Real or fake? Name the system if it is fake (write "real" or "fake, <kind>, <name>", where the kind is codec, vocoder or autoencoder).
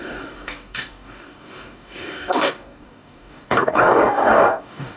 fake, codec, DAC